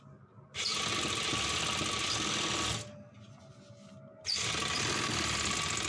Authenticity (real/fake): real